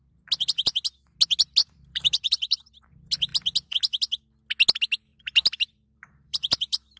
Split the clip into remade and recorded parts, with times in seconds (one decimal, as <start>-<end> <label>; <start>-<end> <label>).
0.0-1.6 recorded; 1.6-2.7 remade; 2.7-5.1 recorded; 5.1-7.0 remade